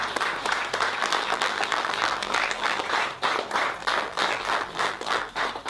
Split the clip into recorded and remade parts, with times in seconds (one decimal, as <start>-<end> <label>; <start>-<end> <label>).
0.0-1.0 recorded; 1.0-2.8 remade; 2.8-3.8 recorded; 3.8-5.3 remade; 5.3-5.7 recorded

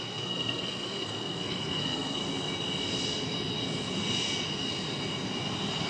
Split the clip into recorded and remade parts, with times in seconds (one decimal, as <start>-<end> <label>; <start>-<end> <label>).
0.0-2.2 remade; 2.2-5.9 recorded

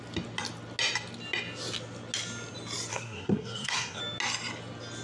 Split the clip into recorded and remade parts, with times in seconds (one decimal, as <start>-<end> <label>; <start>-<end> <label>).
0.0-2.9 recorded; 2.9-4.0 remade; 4.0-5.0 recorded